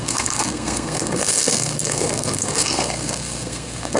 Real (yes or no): no